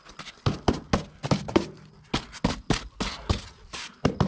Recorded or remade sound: recorded